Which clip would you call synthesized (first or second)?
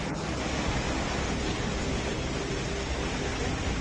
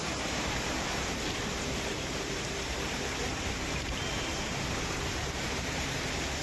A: second